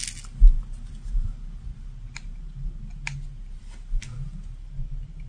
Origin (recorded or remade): recorded